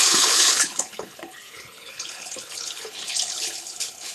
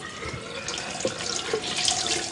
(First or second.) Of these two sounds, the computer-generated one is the first